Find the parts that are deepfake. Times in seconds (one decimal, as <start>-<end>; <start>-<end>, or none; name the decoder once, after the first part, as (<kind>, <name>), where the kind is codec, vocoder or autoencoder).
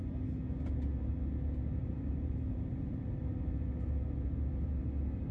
1.8-3.2 (vocoder, BigVGAN v2)